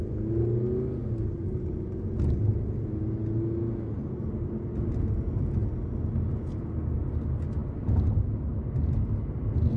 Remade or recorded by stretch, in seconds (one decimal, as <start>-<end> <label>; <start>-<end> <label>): 0.0-9.8 recorded